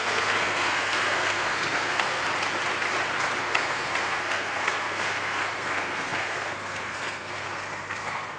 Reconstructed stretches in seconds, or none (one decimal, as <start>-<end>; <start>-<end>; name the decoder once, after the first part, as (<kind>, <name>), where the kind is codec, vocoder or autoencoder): 0.0-2.2 (codec, SNAC); 3.4-8.4